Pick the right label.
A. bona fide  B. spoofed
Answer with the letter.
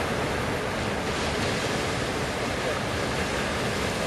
A